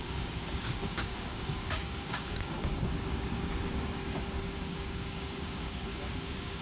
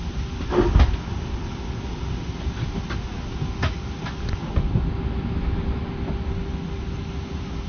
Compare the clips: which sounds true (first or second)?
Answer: second